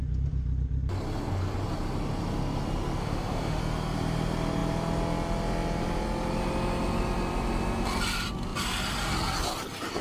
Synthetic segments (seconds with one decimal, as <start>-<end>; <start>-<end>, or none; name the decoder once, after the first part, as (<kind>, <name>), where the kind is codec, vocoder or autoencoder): 3.0-3.6 (autoencoder, DAC-VAE)